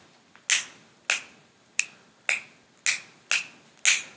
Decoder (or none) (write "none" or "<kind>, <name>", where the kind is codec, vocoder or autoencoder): none